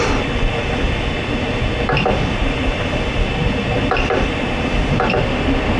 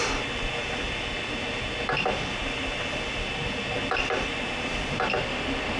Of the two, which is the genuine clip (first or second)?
second